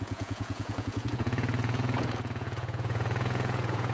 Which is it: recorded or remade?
remade